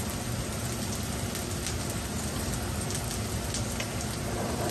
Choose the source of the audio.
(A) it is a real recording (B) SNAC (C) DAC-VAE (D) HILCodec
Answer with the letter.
A